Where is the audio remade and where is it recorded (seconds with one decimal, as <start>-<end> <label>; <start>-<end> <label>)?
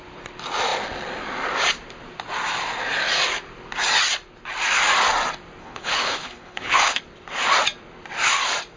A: 0.0-5.6 recorded; 5.6-7.0 remade; 7.0-8.8 recorded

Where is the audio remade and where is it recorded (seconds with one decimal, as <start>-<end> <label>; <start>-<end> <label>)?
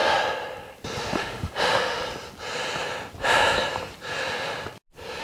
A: 0.0-1.0 recorded; 1.0-2.0 remade; 2.0-5.2 recorded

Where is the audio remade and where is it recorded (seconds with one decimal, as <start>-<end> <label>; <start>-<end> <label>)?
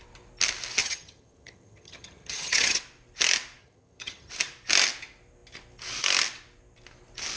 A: 0.0-0.8 recorded; 0.8-2.8 remade; 2.8-3.6 recorded; 3.6-4.3 remade; 4.3-7.4 recorded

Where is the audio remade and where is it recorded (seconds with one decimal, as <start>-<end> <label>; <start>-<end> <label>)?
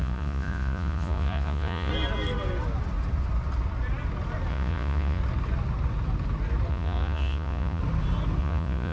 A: 0.0-1.9 remade; 1.9-4.5 recorded; 4.5-5.2 remade; 5.2-6.7 recorded; 6.7-7.8 remade; 7.8-8.4 recorded; 8.4-8.9 remade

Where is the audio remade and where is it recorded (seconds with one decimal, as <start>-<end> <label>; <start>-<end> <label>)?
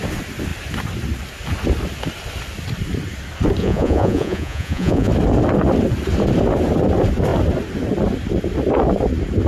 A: 0.0-3.6 recorded; 3.6-5.1 remade; 5.1-9.5 recorded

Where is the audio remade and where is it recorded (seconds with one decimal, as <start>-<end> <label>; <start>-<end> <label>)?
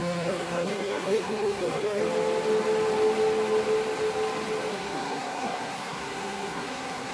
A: 0.0-2.0 remade; 2.0-4.7 recorded; 4.7-7.1 remade